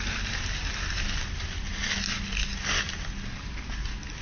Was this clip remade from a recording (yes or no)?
no